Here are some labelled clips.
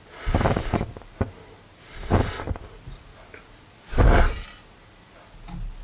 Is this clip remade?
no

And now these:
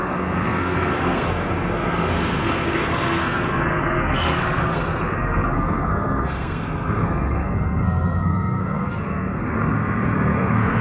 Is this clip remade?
yes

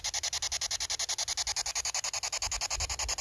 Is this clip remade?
no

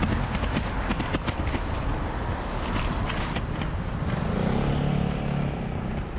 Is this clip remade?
no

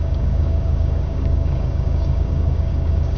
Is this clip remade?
yes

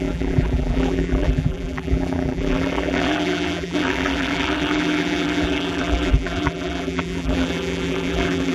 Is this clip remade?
yes